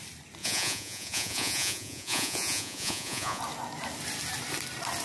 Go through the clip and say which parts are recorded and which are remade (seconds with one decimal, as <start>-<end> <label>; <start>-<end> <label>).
0.0-0.4 recorded; 0.4-3.4 remade; 3.4-5.0 recorded